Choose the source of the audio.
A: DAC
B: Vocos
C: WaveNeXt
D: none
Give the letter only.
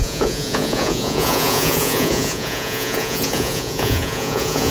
B